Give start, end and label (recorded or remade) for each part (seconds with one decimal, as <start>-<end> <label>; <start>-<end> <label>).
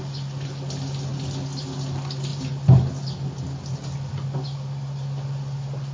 0.0-5.9 recorded